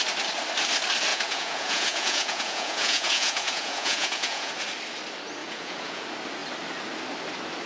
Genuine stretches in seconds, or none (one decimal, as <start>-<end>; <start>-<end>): 0.0-1.1; 4.5-5.4; 6.0-7.7